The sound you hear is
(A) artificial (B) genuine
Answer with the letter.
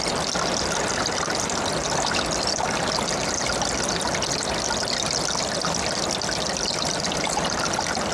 B